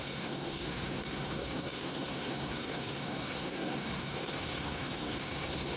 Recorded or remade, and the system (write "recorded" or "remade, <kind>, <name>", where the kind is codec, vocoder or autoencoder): remade, codec, SNAC